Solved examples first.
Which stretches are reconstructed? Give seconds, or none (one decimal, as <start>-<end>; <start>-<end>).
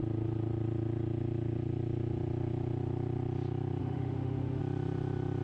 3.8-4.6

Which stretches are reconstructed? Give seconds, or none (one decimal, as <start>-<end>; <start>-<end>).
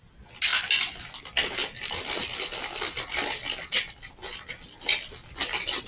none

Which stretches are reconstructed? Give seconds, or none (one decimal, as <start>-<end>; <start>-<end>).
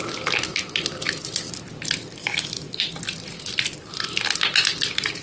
2.2-2.8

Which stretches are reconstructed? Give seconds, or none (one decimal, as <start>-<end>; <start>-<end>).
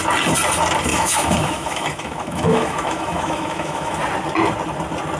0.9-4.0